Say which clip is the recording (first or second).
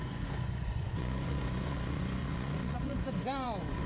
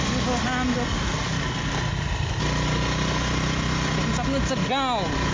second